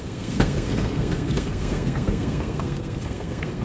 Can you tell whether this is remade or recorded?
remade